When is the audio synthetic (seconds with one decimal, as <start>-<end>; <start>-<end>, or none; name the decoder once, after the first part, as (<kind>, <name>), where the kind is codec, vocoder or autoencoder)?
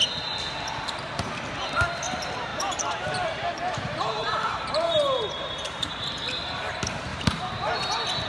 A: 2.5-5.9 (vocoder, BigVGAN v2); 7.1-7.7